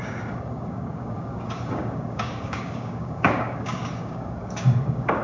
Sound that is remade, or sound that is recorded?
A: remade